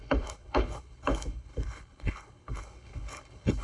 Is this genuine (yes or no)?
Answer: no